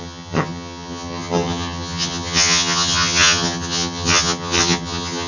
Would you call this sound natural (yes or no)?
no